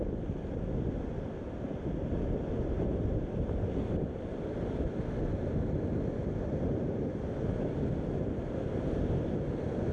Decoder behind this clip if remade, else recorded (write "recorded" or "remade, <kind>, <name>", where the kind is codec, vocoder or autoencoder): recorded